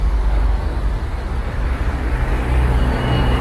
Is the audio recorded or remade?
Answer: remade